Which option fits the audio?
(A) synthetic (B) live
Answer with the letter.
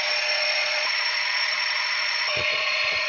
A